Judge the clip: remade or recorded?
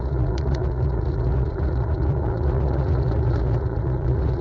remade